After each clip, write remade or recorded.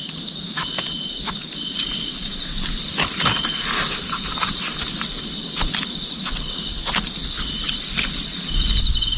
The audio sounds recorded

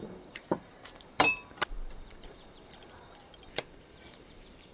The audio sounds remade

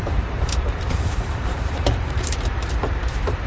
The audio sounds remade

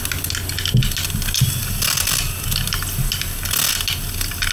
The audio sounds recorded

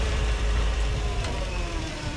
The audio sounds remade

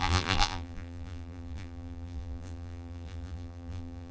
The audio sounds remade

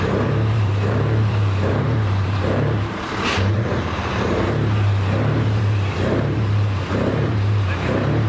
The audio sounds remade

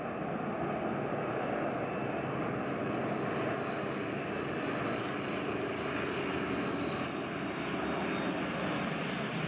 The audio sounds recorded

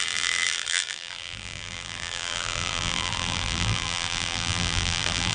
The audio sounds remade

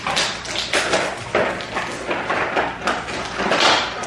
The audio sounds recorded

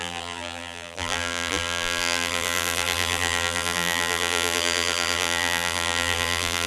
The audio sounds remade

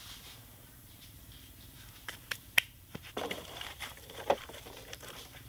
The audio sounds remade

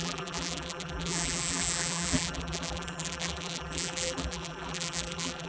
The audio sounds remade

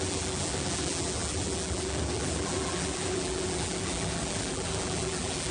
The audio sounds remade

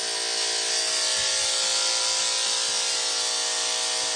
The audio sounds recorded